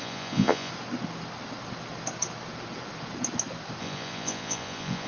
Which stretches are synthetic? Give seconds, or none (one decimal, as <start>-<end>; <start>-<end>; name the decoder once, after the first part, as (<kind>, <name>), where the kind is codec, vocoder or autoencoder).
0.0-0.7 (vocoder, Vocos); 3.8-5.1